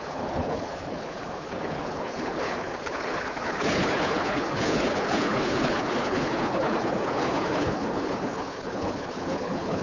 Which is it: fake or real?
fake